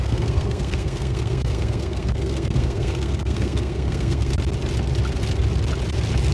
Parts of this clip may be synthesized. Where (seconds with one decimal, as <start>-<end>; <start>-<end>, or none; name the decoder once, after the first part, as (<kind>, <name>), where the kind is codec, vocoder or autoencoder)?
0.0-4.3 (codec, SNAC)